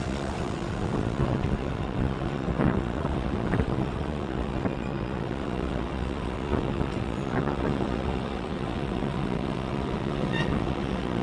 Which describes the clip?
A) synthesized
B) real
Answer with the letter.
A